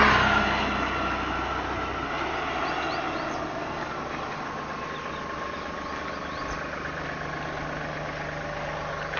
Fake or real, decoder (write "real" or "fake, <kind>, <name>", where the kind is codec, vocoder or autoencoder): real